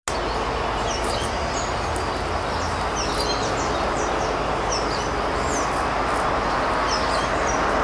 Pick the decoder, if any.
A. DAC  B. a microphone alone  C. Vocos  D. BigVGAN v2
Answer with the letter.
B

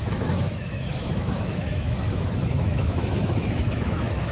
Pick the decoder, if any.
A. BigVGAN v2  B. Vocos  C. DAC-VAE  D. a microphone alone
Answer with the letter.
C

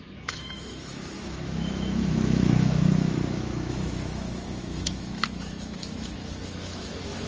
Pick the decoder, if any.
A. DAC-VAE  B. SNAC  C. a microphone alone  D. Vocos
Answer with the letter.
A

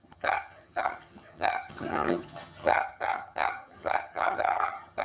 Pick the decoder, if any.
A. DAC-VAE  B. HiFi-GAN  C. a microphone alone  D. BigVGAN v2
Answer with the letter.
B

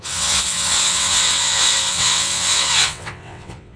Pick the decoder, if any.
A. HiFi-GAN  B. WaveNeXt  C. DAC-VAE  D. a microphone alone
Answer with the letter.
B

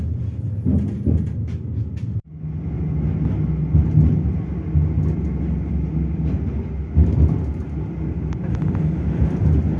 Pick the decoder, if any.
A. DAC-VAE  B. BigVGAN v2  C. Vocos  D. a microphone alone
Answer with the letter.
D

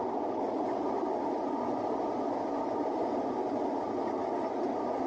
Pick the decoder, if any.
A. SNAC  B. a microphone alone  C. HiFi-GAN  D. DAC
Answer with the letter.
B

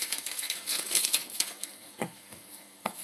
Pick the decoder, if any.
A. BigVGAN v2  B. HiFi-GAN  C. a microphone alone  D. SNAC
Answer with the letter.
D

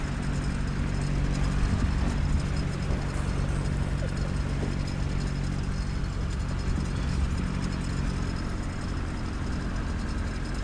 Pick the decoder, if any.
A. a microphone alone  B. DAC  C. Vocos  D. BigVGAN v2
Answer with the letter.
A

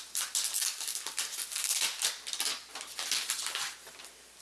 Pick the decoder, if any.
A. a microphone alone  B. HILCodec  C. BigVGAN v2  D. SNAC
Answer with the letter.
A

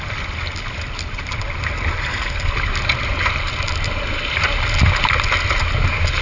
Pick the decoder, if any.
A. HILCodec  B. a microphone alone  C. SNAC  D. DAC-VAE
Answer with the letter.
B